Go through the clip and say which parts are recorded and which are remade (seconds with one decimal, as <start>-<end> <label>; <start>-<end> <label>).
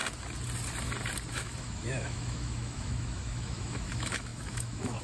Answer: 0.0-1.3 recorded; 1.3-5.0 remade